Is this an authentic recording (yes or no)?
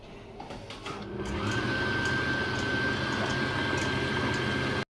yes